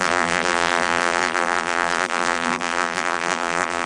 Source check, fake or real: fake